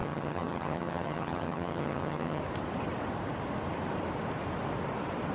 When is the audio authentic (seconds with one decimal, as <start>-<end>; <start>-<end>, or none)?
2.4-5.3